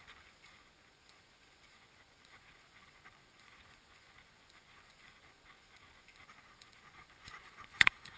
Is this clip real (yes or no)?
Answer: no